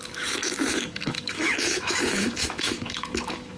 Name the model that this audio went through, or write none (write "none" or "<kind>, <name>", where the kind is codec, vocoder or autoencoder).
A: autoencoder, DAC-VAE